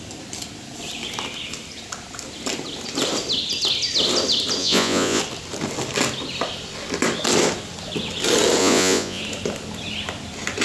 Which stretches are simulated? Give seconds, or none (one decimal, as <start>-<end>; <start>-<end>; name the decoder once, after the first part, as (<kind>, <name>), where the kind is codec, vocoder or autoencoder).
4.6-5.2 (vocoder, Vocos); 8.6-9.2